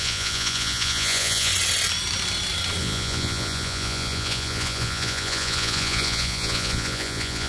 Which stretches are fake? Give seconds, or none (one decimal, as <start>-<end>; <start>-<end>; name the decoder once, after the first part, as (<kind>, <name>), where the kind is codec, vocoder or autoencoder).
0.0-1.5 (vocoder, Vocos); 2.8-7.5